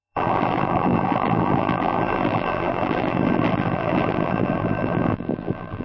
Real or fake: fake